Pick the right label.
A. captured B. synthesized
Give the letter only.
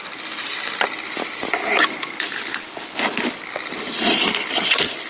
A